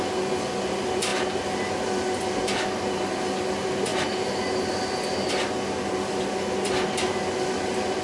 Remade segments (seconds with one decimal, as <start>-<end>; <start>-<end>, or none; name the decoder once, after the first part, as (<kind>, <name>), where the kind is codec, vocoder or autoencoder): none